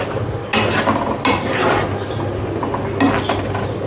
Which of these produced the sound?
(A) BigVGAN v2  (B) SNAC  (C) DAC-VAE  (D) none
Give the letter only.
D